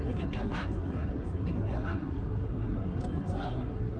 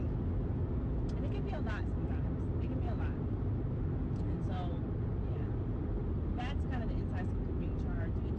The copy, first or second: first